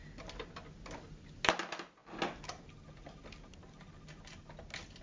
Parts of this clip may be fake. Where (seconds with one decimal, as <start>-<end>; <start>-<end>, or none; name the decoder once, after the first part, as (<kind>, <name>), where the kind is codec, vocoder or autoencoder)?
none

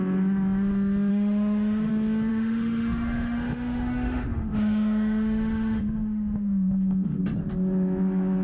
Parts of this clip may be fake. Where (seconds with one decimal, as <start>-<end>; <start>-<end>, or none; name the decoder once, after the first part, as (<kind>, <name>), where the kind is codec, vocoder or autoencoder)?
1.1-1.9 (autoencoder, DAC-VAE); 2.3-7.2

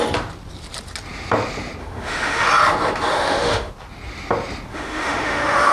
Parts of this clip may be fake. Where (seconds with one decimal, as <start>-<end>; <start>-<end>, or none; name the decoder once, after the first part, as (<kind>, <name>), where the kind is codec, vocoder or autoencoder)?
1.8-2.5 (autoencoder, DAC-VAE); 3.1-3.7; 4.7-5.7

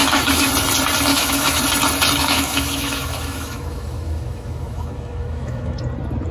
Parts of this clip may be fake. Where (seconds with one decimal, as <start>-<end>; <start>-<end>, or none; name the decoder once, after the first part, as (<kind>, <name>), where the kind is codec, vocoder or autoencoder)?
0.0-0.5 (autoencoder, DAC-VAE); 1.1-1.6; 2.2-5.8

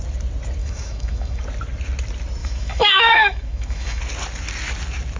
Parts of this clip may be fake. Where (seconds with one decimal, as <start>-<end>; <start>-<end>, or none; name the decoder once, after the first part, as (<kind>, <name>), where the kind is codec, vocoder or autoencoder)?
0.6-1.4 (autoencoder, DAC-VAE); 2.4-4.0